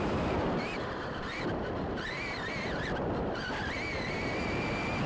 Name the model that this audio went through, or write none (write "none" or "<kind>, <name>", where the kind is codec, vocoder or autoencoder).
vocoder, BigVGAN v2